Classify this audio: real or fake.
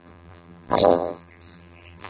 fake